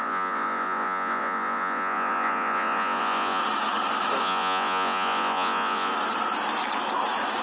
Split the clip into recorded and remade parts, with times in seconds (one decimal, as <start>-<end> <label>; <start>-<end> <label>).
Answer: 0.0-3.4 remade; 3.4-4.2 recorded; 4.2-5.9 remade; 5.9-7.4 recorded